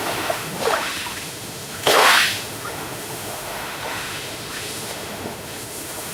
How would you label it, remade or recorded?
remade